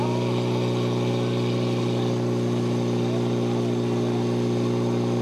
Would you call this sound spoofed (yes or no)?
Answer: no